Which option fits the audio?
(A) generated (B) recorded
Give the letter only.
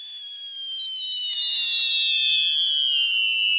B